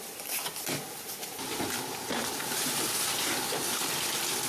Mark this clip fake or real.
real